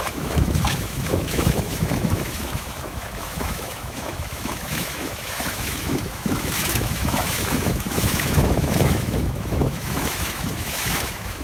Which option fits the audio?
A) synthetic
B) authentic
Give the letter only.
A